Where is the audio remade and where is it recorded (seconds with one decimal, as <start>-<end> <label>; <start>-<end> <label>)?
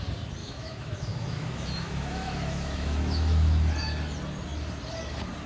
0.0-0.4 recorded; 0.4-3.7 remade; 3.7-5.5 recorded